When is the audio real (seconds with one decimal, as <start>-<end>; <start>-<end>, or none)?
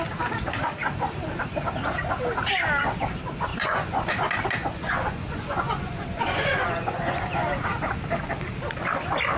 0.0-3.5; 4.1-4.6; 7.2-9.4